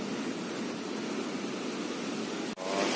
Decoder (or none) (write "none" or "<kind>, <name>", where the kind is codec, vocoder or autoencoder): none